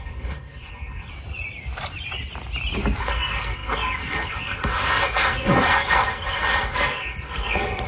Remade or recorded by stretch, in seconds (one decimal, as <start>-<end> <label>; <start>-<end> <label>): 0.0-1.1 remade; 1.1-3.0 recorded; 3.0-7.9 remade